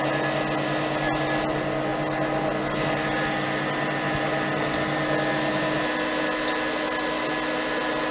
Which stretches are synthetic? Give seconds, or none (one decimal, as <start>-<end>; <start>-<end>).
none